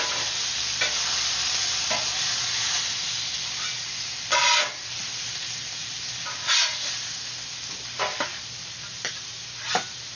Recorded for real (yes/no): yes